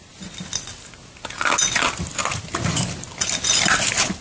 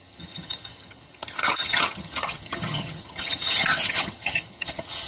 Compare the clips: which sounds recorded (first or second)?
first